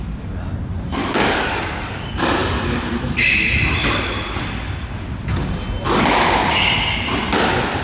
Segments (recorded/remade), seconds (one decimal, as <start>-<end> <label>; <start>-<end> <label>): 0.0-1.0 recorded; 1.0-2.0 remade; 2.0-3.8 recorded; 3.8-4.4 remade; 4.4-7.8 recorded